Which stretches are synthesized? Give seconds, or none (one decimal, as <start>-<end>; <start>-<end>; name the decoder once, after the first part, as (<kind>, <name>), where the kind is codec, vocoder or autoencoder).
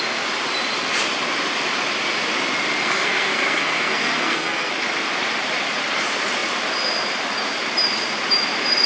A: 2.8-4.7 (codec, SNAC)